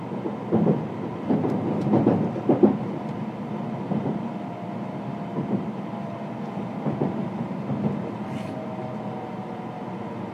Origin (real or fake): real